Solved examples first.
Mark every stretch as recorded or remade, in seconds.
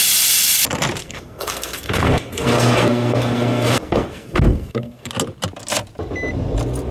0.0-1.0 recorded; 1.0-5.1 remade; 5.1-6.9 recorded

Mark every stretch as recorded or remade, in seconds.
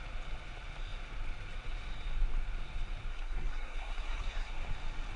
0.0-3.1 recorded; 3.1-4.5 remade; 4.5-5.2 recorded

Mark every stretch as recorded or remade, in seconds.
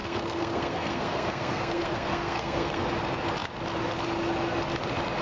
0.0-2.9 remade; 2.9-5.2 recorded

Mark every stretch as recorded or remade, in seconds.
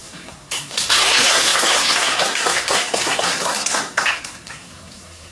0.0-5.3 remade